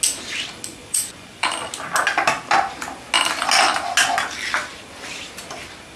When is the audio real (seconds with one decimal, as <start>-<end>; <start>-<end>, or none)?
0.0-0.7; 1.5-6.0